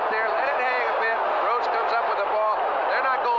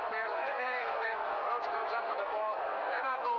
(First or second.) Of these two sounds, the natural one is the first